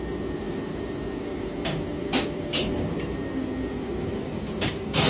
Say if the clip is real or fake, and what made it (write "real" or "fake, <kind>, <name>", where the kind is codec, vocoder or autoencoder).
real